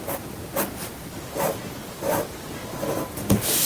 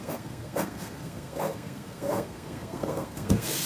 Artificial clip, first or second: second